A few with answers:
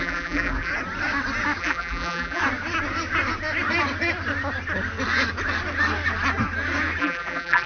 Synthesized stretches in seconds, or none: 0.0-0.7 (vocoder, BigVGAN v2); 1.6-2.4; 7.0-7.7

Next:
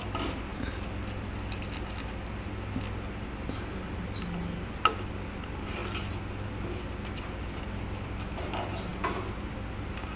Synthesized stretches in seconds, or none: none